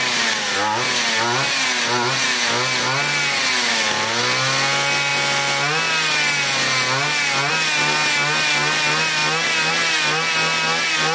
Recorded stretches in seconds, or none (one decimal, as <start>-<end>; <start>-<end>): 0.0-11.1